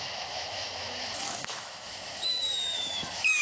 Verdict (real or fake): fake